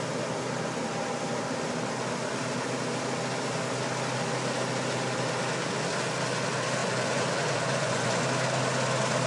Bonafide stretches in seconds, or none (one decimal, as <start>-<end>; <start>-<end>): 0.0-6.8; 8.2-9.3